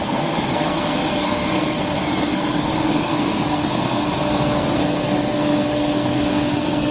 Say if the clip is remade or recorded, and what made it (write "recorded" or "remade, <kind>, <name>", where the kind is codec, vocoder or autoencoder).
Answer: remade, codec, SNAC